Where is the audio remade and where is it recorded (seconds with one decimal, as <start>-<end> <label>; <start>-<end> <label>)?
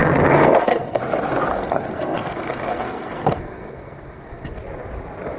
0.0-1.0 remade; 1.0-1.5 recorded; 1.5-4.6 remade; 4.6-5.4 recorded